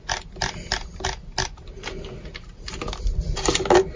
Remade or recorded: recorded